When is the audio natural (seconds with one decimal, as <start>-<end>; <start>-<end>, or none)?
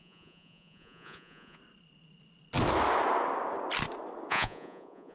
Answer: 1.6-4.3